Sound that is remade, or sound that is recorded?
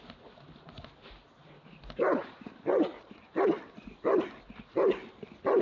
recorded